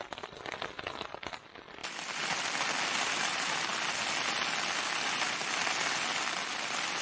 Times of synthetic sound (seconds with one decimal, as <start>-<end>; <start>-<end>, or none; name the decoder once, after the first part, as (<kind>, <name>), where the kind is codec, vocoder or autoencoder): none